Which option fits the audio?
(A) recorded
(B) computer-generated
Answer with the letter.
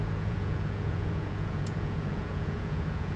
B